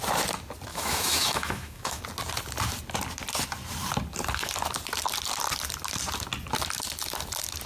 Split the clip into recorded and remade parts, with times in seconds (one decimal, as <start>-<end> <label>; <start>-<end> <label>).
0.0-0.7 recorded; 0.7-2.0 remade; 2.0-7.7 recorded